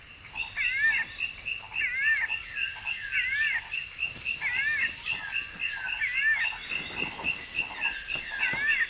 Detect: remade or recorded recorded